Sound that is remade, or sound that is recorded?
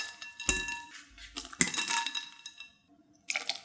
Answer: recorded